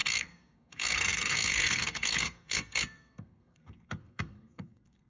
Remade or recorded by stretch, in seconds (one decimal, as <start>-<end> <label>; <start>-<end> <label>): 0.0-5.1 remade